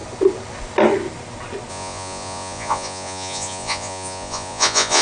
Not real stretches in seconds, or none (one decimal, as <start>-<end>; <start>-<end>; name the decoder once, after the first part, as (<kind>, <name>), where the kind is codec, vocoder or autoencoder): 1.7-5.0 (vocoder, Vocos)